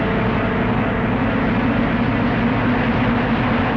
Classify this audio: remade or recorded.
recorded